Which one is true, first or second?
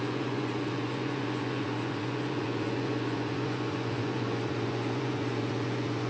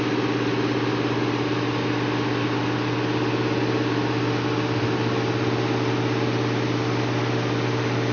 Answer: second